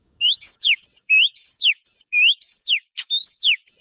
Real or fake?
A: fake